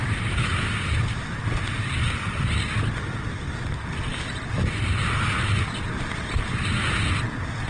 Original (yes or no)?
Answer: yes